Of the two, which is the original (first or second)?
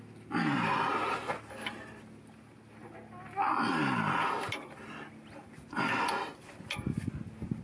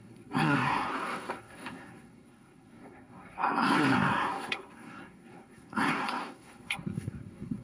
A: first